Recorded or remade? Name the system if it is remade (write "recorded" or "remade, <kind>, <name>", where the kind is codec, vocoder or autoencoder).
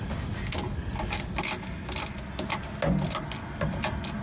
recorded